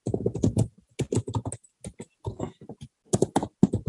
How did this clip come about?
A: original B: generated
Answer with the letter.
A